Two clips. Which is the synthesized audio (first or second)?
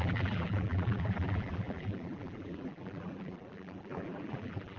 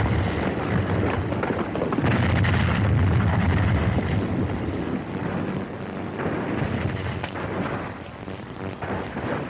first